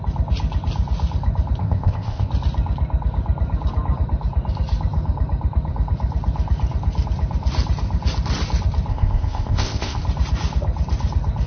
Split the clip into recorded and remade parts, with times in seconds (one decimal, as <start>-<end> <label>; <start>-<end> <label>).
0.0-1.6 recorded; 1.6-2.3 remade; 2.3-8.9 recorded; 8.9-10.0 remade; 10.0-11.5 recorded